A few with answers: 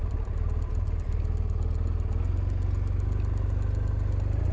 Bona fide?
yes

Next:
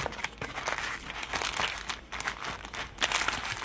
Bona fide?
yes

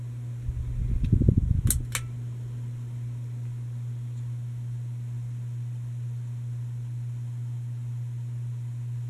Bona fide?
yes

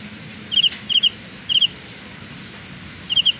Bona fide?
yes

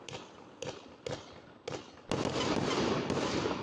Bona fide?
yes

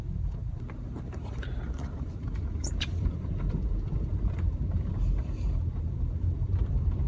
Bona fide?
no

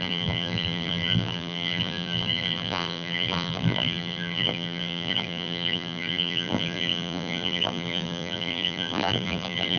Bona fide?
no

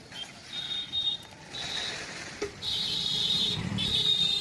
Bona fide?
no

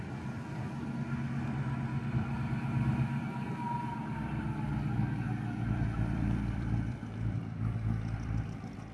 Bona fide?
no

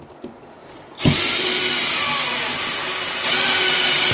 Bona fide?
yes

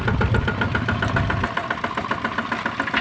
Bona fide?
yes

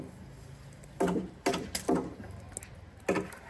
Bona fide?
yes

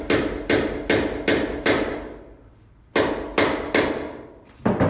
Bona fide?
yes